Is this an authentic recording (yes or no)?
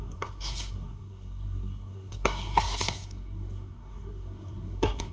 no